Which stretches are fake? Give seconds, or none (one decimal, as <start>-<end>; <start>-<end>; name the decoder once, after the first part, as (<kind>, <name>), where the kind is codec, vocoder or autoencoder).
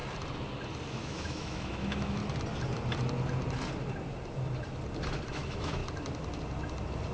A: 0.9-2.2 (autoencoder, DAC-VAE); 5.3-5.8